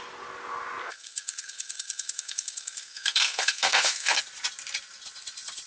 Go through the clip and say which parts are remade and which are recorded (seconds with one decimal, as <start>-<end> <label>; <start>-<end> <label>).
0.0-0.8 recorded; 0.8-4.2 remade; 4.2-5.7 recorded